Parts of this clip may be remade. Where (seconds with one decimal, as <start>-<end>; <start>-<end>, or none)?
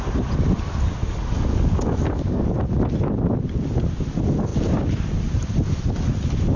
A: 1.0-2.5